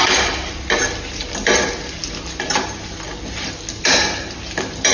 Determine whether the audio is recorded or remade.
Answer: recorded